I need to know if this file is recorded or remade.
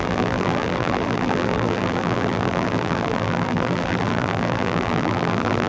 remade